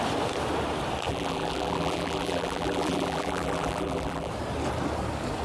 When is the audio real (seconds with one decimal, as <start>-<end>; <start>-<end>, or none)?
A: 0.0-1.1; 4.3-5.4